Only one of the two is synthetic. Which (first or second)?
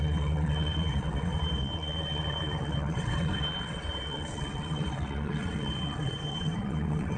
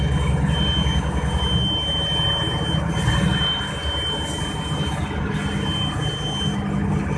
first